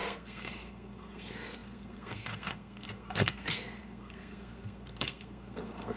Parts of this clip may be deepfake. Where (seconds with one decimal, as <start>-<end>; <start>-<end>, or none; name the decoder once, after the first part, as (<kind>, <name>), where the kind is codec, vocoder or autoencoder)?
0.0-6.0 (codec, SNAC)